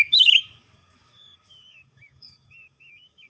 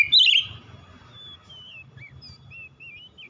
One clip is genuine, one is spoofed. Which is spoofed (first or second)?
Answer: first